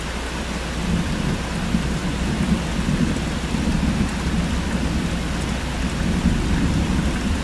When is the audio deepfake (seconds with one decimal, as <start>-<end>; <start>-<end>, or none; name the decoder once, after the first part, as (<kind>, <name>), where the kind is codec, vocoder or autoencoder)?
none